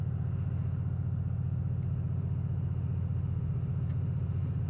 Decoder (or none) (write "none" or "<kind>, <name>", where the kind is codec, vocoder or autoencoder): none